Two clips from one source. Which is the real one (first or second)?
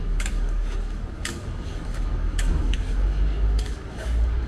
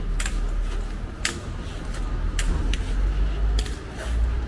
second